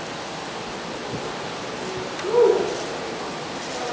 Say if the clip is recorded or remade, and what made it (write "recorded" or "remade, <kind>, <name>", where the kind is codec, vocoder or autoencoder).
recorded